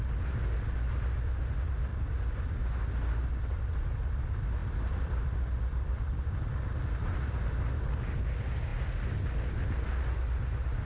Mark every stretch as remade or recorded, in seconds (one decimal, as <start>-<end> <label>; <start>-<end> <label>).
0.0-4.6 recorded; 4.6-7.1 remade; 7.1-10.8 recorded

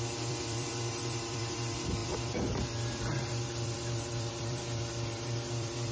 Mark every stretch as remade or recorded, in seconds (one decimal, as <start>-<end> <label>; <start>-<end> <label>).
0.0-5.9 remade

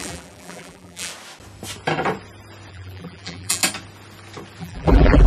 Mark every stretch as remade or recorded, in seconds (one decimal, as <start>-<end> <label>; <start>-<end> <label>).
0.0-1.1 remade; 1.1-2.7 recorded; 2.7-3.6 remade; 3.6-4.6 recorded; 4.6-5.3 remade

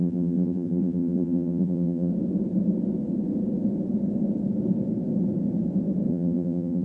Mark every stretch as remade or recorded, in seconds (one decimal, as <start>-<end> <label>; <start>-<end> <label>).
0.0-2.1 remade; 2.1-6.1 recorded; 6.1-6.8 remade

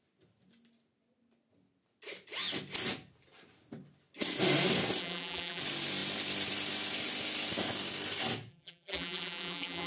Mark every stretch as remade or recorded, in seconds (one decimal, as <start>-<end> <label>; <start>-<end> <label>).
0.0-5.0 recorded; 5.0-5.6 remade; 5.6-8.5 recorded; 8.5-9.9 remade